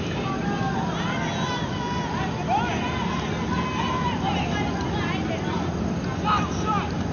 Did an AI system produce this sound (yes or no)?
no